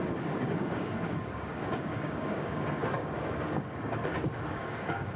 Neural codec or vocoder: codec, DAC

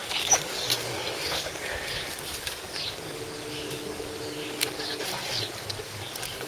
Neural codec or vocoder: codec, DAC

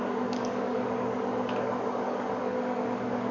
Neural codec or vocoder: codec, DAC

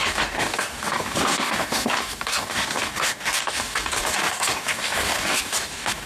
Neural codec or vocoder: codec, DAC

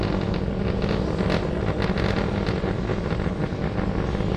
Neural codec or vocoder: none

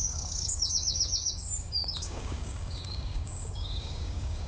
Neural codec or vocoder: codec, DAC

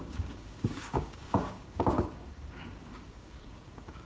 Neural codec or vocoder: codec, DAC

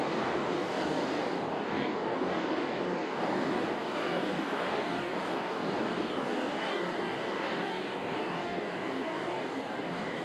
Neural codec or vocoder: codec, DAC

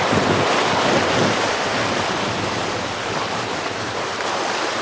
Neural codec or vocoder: none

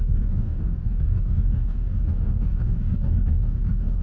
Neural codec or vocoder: codec, DAC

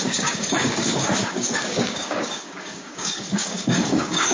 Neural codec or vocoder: codec, DAC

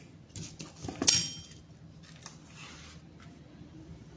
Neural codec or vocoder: none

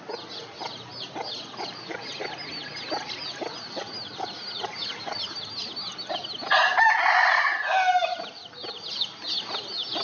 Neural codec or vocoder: none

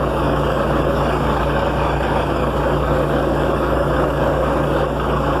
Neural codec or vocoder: codec, DAC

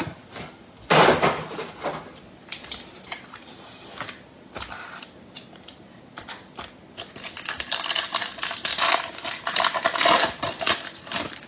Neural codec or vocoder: none